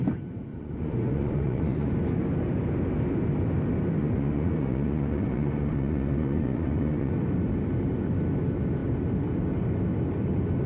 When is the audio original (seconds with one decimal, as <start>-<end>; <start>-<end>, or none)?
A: 0.0-0.5; 1.9-4.0; 7.1-10.7